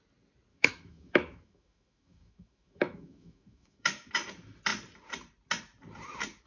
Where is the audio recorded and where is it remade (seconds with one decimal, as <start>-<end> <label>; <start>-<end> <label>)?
0.0-0.5 recorded; 0.5-4.1 remade; 4.1-6.5 recorded